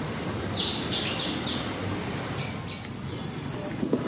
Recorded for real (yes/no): yes